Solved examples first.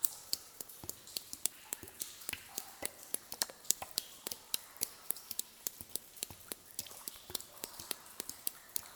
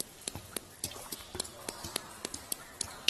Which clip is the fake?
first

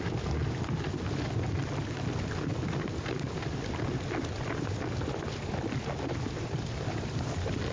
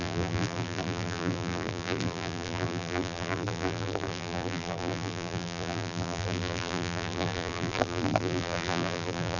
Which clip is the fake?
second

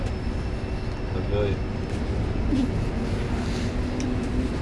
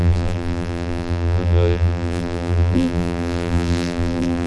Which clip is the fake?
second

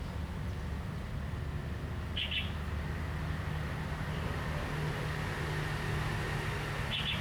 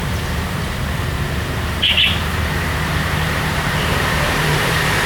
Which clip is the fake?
second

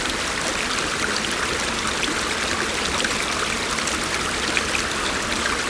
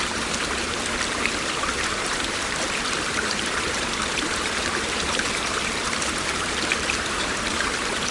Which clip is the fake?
second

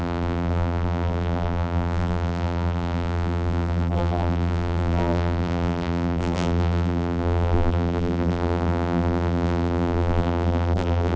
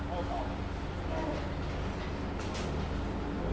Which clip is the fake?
first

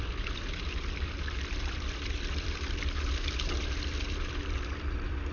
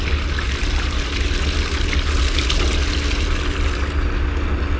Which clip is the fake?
first